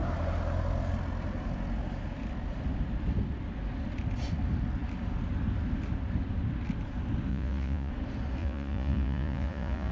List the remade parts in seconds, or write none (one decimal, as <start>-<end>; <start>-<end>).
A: 7.3-7.9; 8.4-9.9